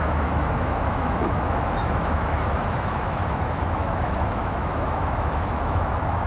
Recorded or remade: remade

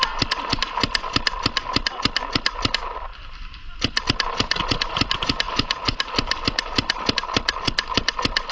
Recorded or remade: recorded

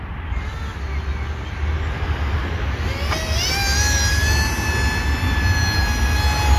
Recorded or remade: recorded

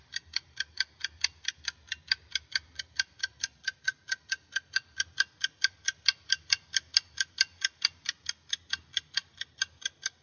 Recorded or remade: recorded